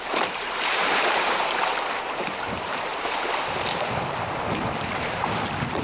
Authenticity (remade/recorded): remade